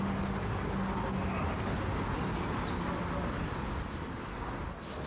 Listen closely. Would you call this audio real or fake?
real